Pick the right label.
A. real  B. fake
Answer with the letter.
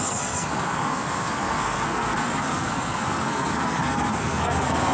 B